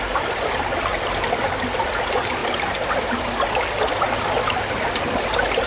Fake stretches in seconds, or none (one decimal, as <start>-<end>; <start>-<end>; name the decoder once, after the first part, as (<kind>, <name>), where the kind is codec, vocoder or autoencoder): none